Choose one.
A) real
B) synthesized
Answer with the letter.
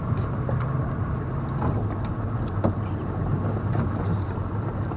A